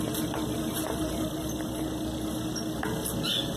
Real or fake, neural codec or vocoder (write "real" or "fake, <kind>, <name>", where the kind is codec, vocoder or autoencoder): real